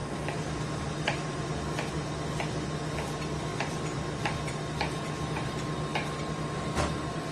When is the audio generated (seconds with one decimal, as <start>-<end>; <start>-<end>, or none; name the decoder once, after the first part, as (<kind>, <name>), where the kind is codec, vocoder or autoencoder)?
0.0-1.9 (vocoder, BigVGAN v2); 3.5-4.2